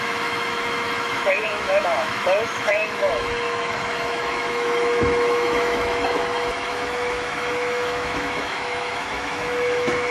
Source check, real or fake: fake